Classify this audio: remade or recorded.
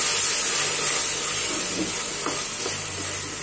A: recorded